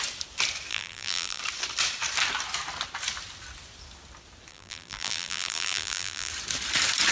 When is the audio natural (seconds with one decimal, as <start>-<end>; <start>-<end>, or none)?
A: 0.0-0.7; 1.4-4.5; 6.3-7.1